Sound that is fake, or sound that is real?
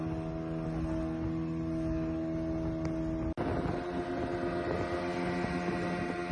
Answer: real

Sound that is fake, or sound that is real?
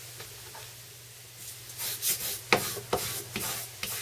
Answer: real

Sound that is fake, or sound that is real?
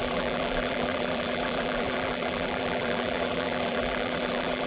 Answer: fake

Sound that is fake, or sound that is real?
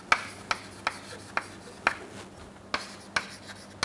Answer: real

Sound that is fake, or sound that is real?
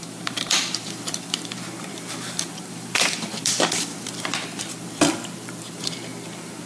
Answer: fake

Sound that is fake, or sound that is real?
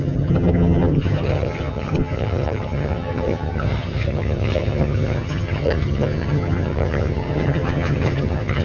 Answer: fake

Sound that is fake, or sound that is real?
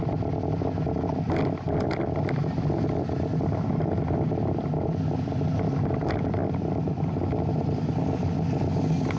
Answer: real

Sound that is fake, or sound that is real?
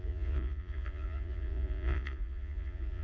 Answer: fake